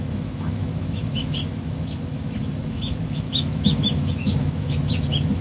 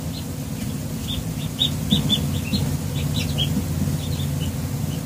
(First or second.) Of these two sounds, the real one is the second